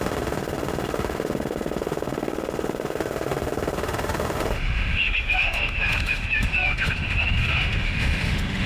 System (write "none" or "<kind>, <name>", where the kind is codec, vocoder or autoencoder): autoencoder, DAC-VAE